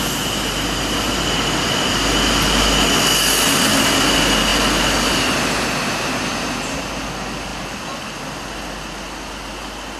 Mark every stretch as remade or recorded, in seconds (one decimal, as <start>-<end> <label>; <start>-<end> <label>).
0.0-10.0 recorded

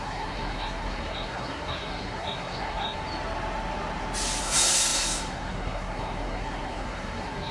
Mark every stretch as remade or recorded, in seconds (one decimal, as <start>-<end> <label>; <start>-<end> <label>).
0.0-3.0 remade; 3.0-4.4 recorded; 4.4-7.5 remade

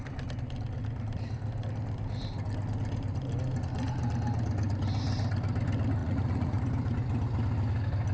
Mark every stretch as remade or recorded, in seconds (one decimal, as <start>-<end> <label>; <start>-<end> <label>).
0.0-6.0 recorded; 6.0-6.6 remade; 6.6-8.1 recorded

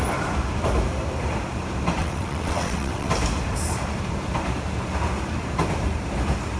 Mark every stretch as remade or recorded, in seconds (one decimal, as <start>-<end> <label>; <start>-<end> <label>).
0.0-2.0 recorded; 2.0-3.1 remade; 3.1-6.6 recorded

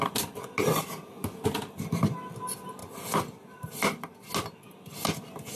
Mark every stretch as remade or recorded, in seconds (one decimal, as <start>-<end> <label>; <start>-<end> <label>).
0.0-2.8 recorded; 2.8-4.3 remade; 4.3-5.6 recorded